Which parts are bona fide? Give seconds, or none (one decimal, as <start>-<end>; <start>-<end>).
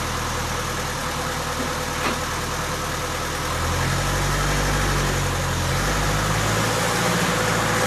0.0-7.9